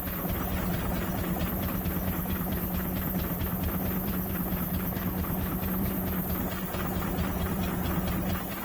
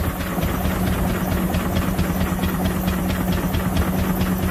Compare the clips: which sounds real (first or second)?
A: second